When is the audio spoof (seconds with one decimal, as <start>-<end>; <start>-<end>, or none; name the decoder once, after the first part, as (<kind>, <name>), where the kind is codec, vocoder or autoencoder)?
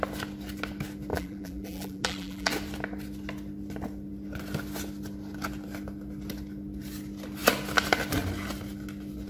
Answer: 1.1-2.5 (vocoder, BigVGAN v2)